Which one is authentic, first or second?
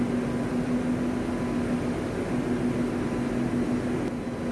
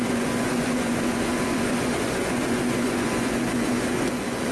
first